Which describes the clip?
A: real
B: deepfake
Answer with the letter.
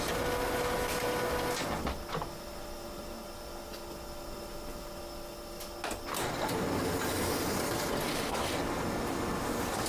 A